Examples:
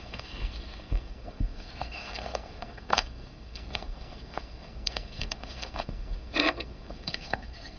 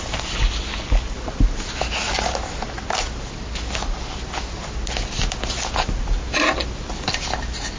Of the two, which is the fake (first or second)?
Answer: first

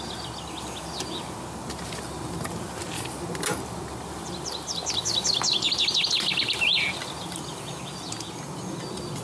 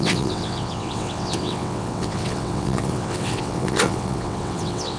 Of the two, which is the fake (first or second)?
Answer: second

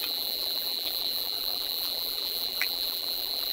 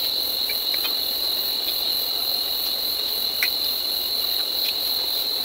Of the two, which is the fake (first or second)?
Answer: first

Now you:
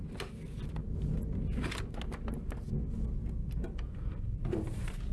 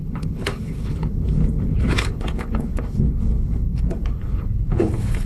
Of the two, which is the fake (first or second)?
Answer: second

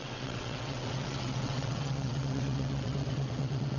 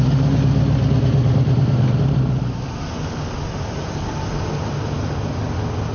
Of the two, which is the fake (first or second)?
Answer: first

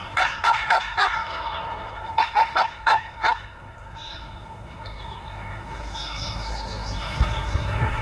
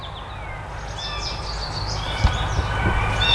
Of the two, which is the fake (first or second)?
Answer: first